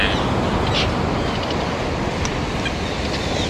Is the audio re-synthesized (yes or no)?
no